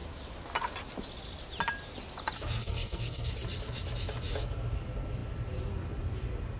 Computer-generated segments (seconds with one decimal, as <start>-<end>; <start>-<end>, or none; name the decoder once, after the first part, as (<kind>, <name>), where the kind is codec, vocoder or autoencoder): 2.6-3.3 (codec, SNAC)